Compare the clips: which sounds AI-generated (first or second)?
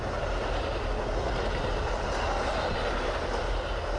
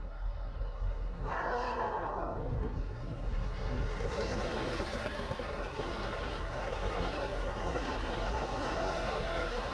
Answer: second